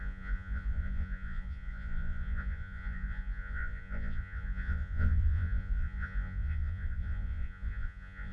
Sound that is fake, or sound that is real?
fake